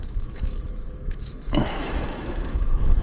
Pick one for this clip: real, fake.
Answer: fake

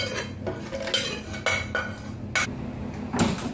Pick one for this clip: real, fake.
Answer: real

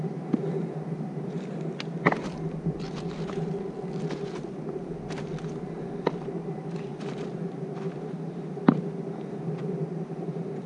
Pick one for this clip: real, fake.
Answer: real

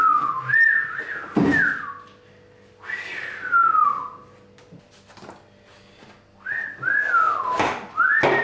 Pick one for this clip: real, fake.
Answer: real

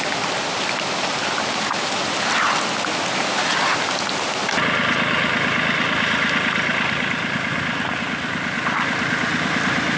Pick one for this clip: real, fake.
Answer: real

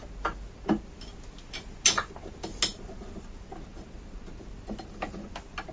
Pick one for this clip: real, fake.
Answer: real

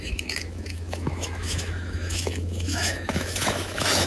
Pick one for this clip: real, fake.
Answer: fake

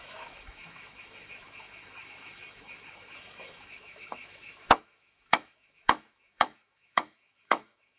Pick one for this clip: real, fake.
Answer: fake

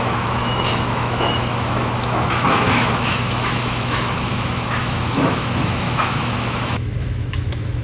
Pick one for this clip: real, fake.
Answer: fake